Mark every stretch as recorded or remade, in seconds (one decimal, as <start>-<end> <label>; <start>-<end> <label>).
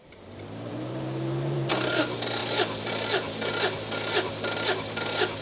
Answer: 0.0-1.7 remade; 1.7-2.4 recorded; 2.4-3.5 remade; 3.5-5.4 recorded